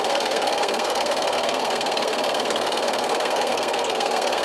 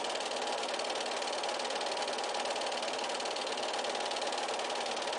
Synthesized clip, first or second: first